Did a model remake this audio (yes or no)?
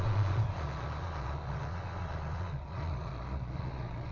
yes